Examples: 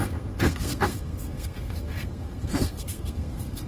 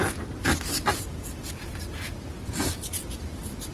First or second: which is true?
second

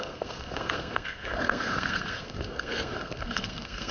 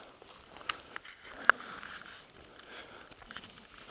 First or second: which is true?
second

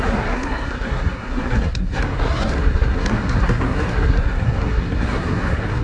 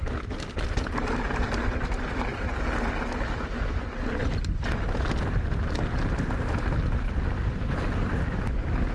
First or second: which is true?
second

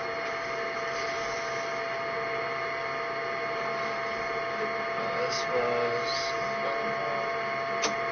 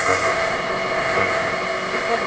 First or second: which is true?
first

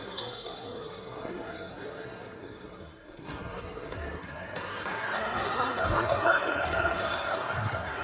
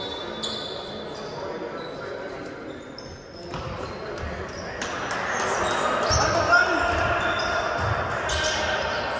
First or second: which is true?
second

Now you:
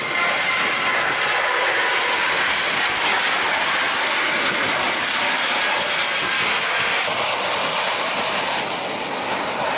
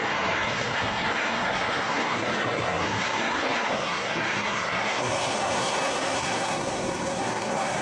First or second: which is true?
first